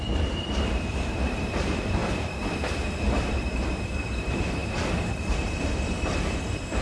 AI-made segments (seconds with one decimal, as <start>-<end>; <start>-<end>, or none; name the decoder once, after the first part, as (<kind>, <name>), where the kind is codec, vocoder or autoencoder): 0.0-6.8 (vocoder, BigVGAN v2)